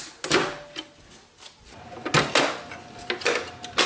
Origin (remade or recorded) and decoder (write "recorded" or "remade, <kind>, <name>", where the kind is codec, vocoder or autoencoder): recorded